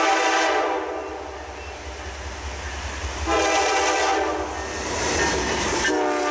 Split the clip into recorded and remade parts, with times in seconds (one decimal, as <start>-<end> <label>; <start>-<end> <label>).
0.0-6.3 recorded